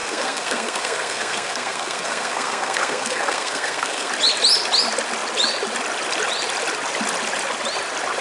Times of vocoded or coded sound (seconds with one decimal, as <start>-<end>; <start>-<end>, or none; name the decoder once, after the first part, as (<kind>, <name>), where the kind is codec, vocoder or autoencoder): 0.0-4.1 (codec, SNAC)